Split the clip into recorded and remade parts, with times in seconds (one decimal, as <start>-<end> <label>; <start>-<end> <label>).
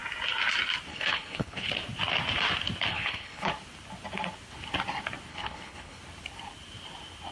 0.0-0.9 recorded; 0.9-1.7 remade; 1.7-2.9 recorded; 2.9-3.5 remade; 3.5-5.3 recorded; 5.3-6.0 remade; 6.0-7.3 recorded